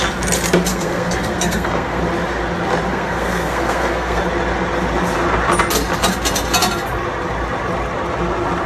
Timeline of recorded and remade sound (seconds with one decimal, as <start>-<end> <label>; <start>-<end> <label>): 0.0-0.7 recorded; 0.7-2.0 remade; 2.0-2.9 recorded; 2.9-4.2 remade; 4.2-8.7 recorded